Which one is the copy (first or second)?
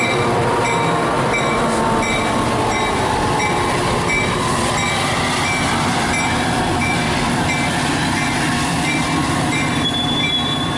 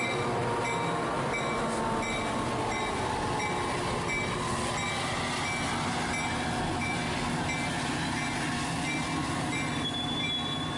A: first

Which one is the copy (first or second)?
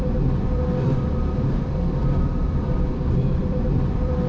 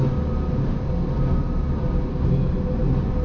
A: first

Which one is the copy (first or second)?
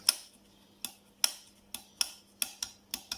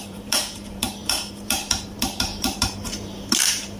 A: second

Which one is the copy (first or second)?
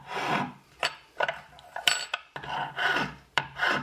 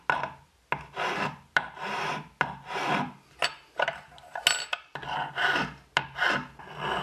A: first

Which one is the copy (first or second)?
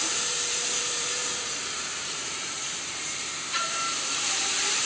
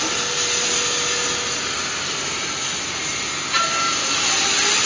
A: first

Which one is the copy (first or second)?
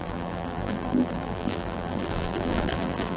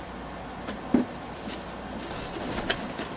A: first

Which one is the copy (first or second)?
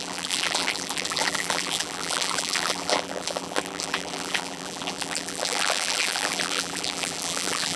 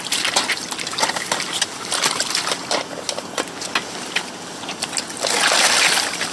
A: first